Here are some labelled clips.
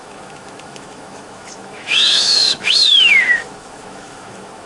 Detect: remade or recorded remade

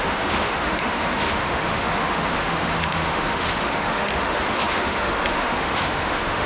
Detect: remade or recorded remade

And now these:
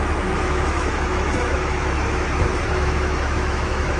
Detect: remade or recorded remade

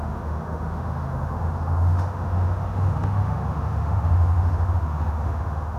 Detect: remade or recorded remade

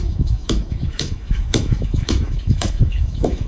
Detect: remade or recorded remade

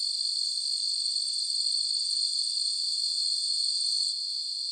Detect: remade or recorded recorded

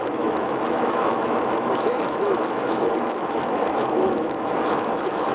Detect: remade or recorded remade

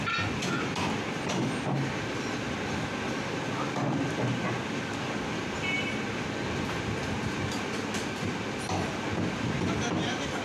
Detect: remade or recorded recorded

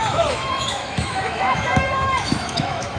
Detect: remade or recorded remade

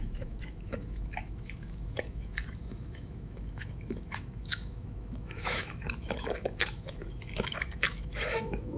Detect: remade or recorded remade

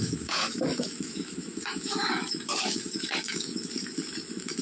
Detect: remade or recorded remade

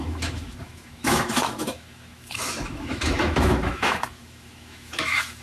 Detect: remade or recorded remade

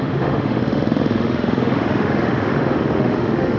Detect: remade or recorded remade